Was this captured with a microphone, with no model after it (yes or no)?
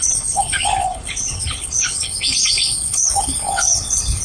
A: no